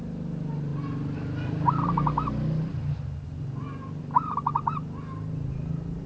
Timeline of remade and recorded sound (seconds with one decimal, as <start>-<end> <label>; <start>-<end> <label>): 0.0-6.1 recorded